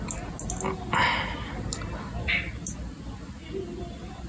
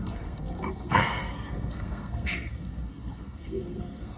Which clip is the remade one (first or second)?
second